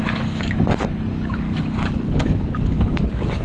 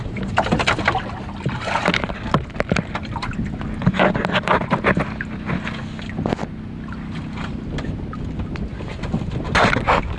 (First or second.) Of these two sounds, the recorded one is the second